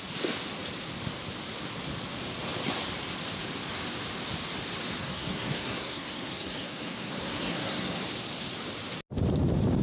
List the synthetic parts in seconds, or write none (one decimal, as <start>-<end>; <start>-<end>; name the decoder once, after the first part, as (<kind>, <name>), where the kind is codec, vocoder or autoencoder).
5.0-7.9 (codec, SNAC)